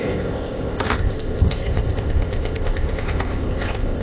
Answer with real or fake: fake